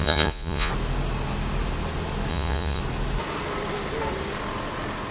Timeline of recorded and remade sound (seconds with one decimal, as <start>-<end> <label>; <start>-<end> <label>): 0.0-0.7 remade; 0.7-2.3 recorded; 2.3-2.8 remade; 2.8-5.1 recorded